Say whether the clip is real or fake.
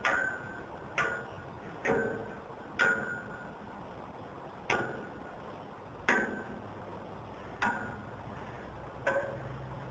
real